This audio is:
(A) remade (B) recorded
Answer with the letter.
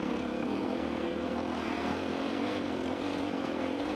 A